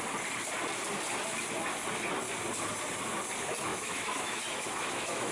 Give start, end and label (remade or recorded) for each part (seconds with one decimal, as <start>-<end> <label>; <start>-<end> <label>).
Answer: 0.0-3.7 recorded; 3.7-5.3 remade